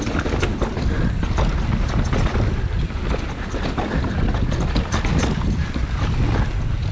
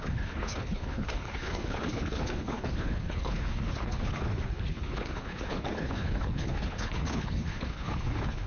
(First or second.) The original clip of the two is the first